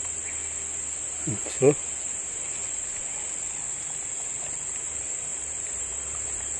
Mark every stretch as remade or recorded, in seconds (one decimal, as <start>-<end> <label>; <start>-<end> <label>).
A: 0.0-0.4 remade; 0.4-1.0 recorded; 1.0-3.1 remade; 3.1-4.8 recorded; 4.8-6.6 remade